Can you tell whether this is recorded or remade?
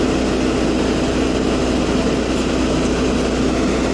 recorded